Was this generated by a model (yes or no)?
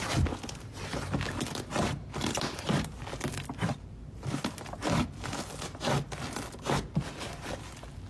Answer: no